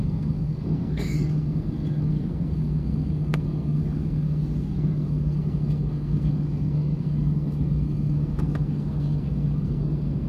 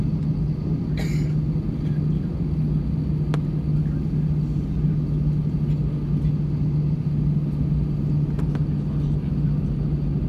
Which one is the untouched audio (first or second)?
second